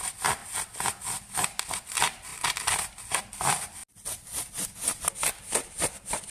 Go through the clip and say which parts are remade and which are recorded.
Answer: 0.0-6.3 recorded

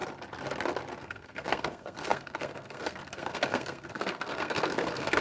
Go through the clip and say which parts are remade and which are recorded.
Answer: 0.0-1.0 recorded; 1.0-5.2 remade

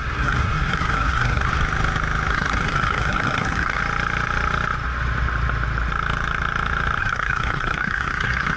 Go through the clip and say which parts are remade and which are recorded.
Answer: 0.0-1.5 remade; 1.5-2.3 recorded; 2.3-3.8 remade; 3.8-7.0 recorded; 7.0-8.6 remade

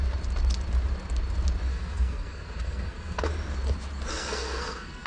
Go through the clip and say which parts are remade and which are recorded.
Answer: 0.0-1.7 recorded; 1.7-3.3 remade; 3.3-4.1 recorded; 4.1-5.1 remade

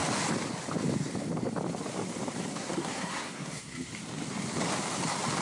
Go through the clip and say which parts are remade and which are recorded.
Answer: 0.0-2.5 recorded; 2.5-3.9 remade; 3.9-5.4 recorded

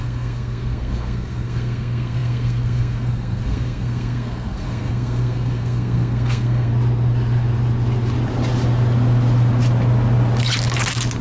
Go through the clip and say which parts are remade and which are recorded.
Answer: 0.0-6.7 remade; 6.7-11.2 recorded

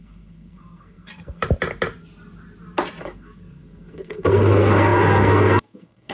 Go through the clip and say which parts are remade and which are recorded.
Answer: 0.0-1.4 remade; 1.4-3.0 recorded; 3.0-6.1 remade